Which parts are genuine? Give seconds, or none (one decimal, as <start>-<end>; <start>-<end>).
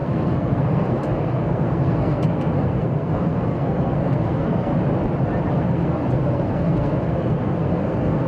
4.7-5.5